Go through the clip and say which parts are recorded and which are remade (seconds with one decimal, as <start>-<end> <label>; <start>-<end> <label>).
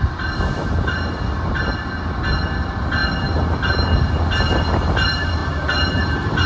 0.0-5.4 recorded; 5.4-6.5 remade